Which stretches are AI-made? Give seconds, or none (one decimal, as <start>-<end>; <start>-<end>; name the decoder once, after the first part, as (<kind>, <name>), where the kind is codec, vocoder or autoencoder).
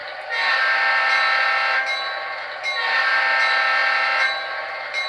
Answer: none